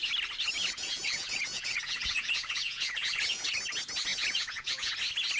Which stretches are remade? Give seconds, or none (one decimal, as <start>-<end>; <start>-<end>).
0.6-3.6; 4.1-4.9